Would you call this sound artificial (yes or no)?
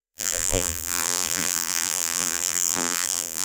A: yes